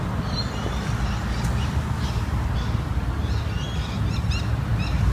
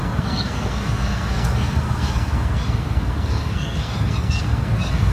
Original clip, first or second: first